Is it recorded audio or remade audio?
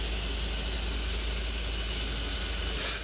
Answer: recorded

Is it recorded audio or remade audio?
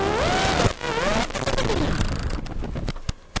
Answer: recorded